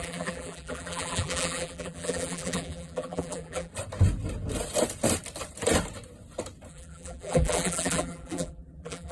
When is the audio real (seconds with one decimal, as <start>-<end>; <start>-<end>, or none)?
3.7-6.7